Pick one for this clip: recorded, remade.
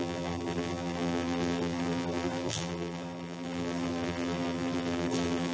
remade